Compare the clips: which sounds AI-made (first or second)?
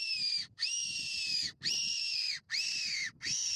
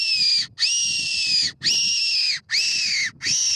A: first